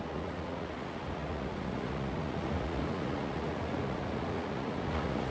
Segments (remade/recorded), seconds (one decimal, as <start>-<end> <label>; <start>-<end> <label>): 0.0-5.3 remade